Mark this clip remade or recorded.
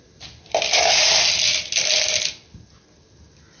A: recorded